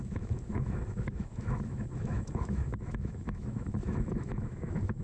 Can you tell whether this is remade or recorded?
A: remade